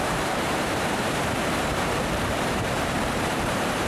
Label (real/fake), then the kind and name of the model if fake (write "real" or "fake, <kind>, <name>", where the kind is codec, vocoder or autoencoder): fake, vocoder, BigVGAN v2